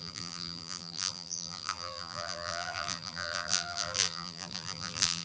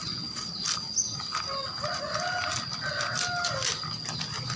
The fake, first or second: first